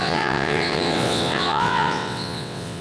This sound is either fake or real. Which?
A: fake